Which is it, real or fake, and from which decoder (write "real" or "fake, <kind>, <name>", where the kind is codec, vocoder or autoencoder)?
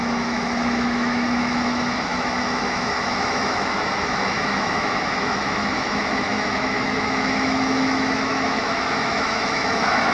fake, autoencoder, DAC-VAE